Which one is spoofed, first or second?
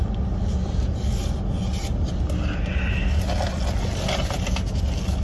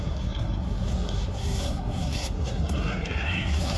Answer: second